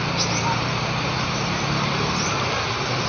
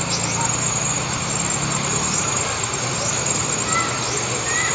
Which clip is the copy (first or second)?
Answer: second